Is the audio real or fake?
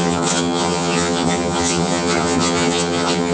fake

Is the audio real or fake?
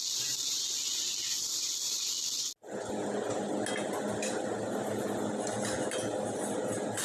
real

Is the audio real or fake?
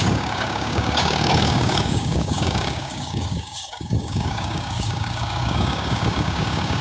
fake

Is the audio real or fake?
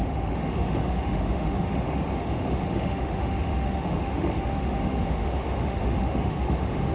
fake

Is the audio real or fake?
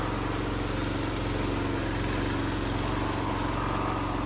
real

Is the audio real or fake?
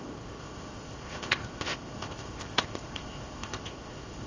fake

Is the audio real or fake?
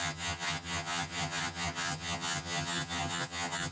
fake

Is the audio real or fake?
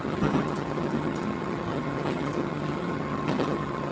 fake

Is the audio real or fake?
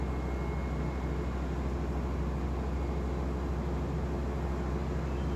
real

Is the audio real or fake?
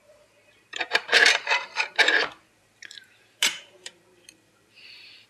fake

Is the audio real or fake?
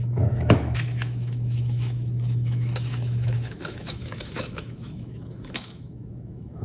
fake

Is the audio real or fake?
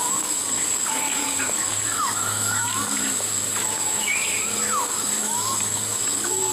fake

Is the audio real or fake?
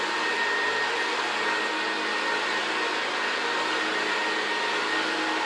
real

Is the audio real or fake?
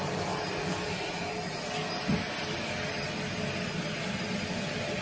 real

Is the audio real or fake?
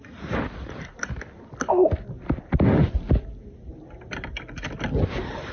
fake